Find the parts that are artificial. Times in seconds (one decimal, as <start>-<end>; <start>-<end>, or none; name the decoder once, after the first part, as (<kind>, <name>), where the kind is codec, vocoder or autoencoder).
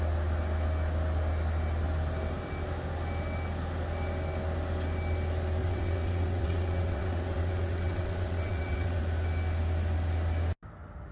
5.6-9.0 (vocoder, WaveNeXt)